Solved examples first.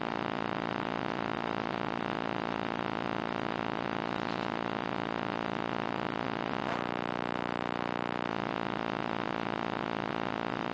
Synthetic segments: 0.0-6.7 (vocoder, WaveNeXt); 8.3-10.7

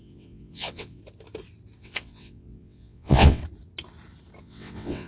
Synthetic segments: 0.0-1.0 (vocoder, WaveNeXt); 1.8-3.4; 4.4-5.1

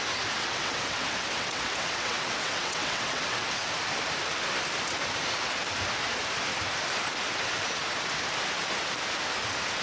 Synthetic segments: 0.4-3.7 (vocoder, WaveNeXt)